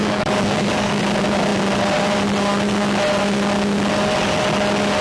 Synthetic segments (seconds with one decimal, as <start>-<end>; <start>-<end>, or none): 0.0-1.0